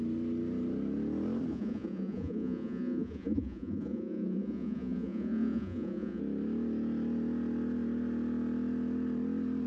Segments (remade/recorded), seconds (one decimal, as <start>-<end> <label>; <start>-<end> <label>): 0.0-1.5 recorded; 1.5-6.2 remade; 6.2-9.7 recorded